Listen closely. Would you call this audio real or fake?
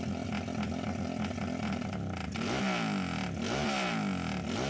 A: real